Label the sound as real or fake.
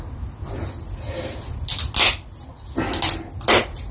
real